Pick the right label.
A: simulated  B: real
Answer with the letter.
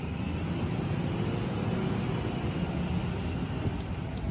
B